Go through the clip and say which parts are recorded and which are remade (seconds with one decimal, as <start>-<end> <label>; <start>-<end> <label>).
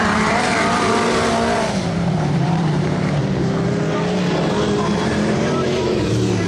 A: 0.0-0.5 remade; 0.5-1.7 recorded; 1.7-3.2 remade; 3.2-5.0 recorded; 5.0-6.5 remade